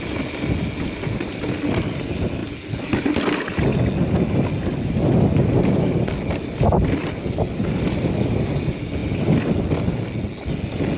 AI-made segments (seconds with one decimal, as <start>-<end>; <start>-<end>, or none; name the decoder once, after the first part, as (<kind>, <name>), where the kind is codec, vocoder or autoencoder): none